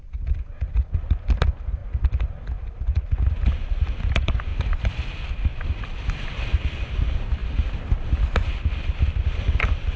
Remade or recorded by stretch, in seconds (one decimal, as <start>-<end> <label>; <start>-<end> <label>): 0.0-1.8 recorded; 1.8-2.6 remade; 2.6-4.5 recorded; 4.5-5.1 remade; 5.1-5.5 recorded; 5.5-6.4 remade; 6.4-10.0 recorded